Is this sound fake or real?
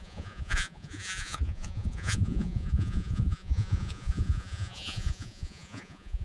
fake